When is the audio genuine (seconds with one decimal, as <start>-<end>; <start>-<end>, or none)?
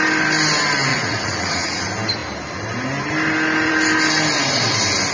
0.0-0.9; 1.8-5.1